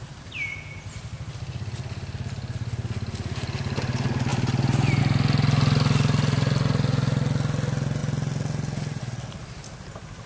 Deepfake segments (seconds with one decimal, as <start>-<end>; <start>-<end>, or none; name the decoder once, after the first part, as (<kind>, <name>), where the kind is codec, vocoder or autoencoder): none